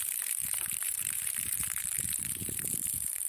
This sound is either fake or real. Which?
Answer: fake